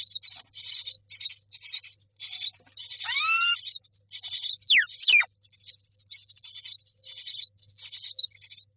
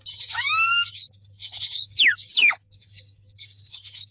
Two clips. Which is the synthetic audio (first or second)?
second